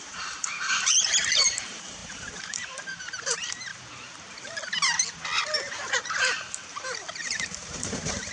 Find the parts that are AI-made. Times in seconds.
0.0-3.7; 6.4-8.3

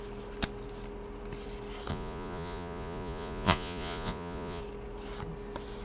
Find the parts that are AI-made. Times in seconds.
1.9-4.6

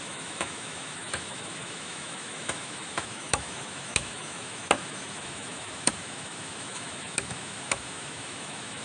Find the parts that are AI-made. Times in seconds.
0.0-8.8

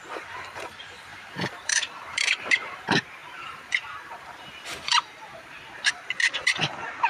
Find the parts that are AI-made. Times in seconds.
0.0-7.1